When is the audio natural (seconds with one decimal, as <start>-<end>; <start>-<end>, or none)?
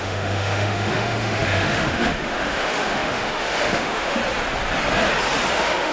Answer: 4.2-5.5